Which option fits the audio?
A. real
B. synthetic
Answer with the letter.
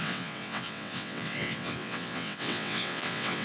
B